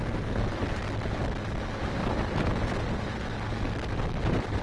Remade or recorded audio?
remade